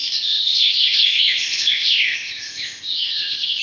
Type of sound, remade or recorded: remade